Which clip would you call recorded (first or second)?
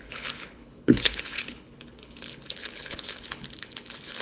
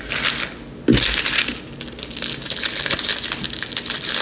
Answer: second